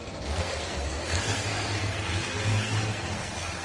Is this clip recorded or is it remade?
remade